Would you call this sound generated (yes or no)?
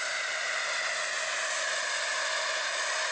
no